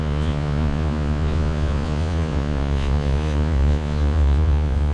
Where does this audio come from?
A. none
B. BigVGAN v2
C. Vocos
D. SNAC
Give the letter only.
C